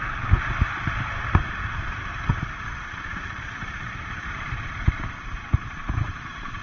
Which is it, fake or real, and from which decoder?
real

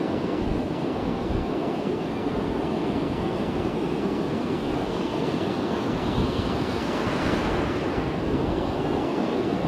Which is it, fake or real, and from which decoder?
fake, codec, SNAC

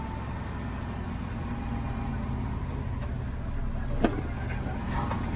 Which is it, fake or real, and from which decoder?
real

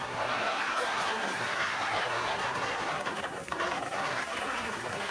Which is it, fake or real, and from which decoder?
fake, codec, SNAC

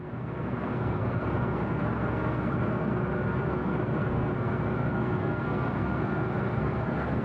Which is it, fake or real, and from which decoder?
fake, codec, SNAC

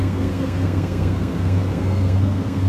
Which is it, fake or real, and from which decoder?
fake, codec, SNAC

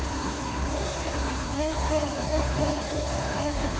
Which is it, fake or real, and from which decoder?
fake, codec, SNAC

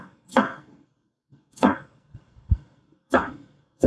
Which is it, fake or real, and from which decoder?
fake, codec, SNAC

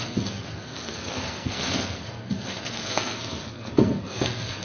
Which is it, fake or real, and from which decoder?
fake, codec, SNAC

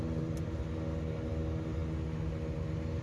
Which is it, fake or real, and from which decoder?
real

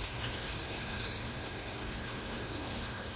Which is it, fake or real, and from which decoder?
fake, codec, SNAC